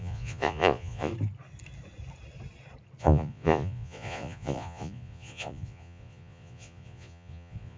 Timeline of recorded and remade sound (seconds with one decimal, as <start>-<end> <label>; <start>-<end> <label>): 0.0-1.1 remade; 1.1-3.0 recorded; 3.0-7.8 remade